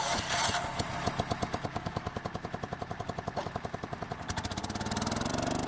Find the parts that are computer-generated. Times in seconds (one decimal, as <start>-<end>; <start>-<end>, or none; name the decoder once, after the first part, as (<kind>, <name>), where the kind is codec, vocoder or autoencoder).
1.7-2.2 (codec, DAC)